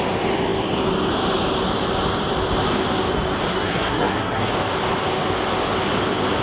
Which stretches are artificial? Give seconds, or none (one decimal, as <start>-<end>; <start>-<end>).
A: 3.5-4.5